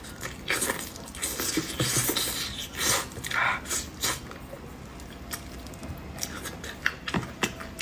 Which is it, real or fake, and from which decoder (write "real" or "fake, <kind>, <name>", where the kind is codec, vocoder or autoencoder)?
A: real